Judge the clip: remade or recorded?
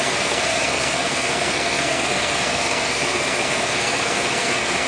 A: remade